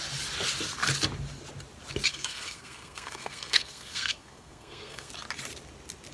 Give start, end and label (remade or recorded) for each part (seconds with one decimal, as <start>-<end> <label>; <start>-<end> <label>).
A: 0.0-2.1 recorded; 2.1-5.1 remade; 5.1-6.1 recorded